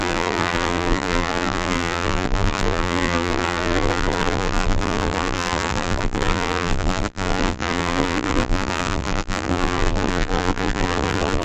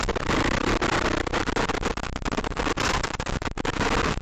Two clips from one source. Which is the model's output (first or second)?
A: first